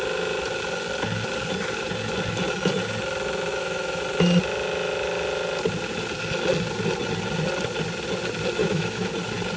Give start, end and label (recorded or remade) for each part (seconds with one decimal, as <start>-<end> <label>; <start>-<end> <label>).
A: 0.0-3.5 recorded; 3.5-4.0 remade; 4.0-8.6 recorded; 8.6-9.1 remade; 9.1-9.6 recorded